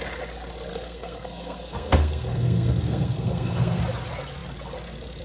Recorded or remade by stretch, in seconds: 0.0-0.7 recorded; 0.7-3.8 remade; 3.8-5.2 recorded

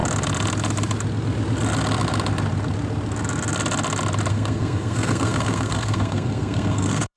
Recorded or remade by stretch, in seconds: 0.0-4.3 recorded; 4.3-7.2 remade

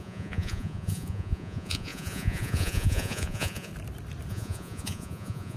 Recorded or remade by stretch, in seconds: 0.0-3.7 remade; 3.7-4.3 recorded; 4.3-5.6 remade